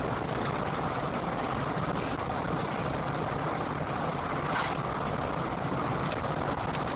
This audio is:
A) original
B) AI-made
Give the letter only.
A